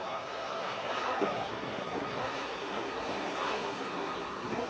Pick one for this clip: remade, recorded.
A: remade